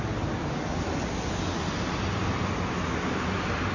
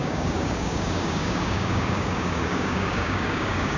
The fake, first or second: second